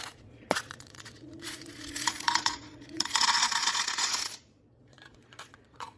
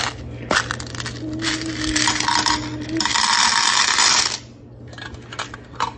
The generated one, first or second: first